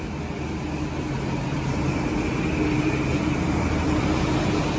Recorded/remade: recorded